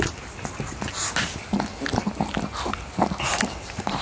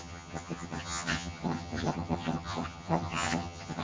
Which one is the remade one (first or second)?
second